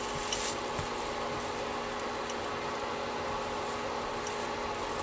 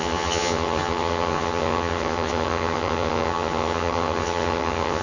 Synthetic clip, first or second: second